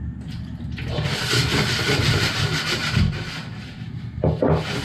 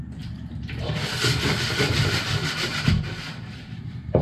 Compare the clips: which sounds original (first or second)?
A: first